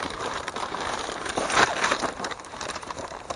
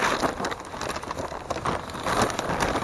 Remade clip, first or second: first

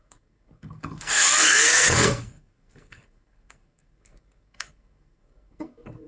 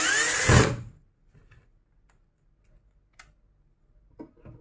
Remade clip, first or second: first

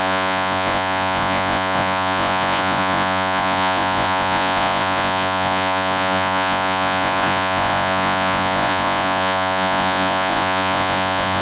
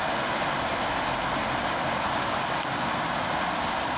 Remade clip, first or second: first